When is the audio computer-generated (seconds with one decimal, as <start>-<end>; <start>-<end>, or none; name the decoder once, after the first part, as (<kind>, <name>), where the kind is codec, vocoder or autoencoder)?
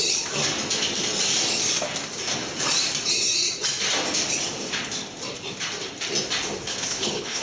6.7-7.4 (codec, HILCodec)